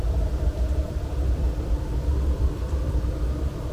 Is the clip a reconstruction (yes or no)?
yes